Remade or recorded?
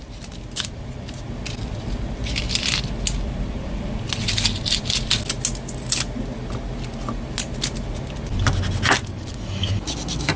recorded